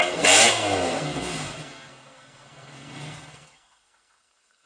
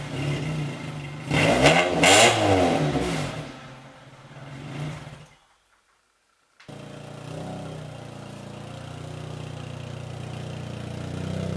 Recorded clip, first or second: second